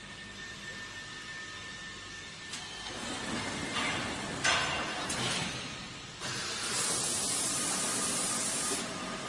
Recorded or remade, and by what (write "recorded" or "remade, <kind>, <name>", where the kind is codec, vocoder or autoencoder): recorded